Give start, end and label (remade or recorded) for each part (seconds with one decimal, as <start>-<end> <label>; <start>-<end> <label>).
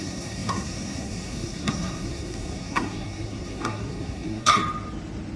0.0-4.6 remade; 4.6-5.4 recorded